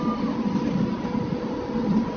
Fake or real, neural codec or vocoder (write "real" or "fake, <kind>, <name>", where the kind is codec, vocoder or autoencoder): real